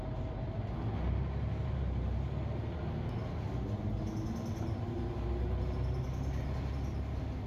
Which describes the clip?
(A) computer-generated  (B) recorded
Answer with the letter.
B